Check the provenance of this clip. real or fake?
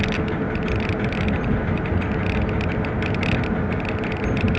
real